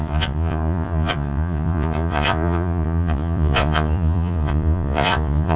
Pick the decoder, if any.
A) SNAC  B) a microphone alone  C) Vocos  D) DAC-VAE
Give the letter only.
C